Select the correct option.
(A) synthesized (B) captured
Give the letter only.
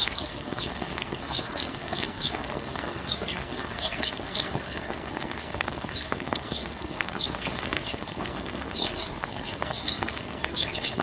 A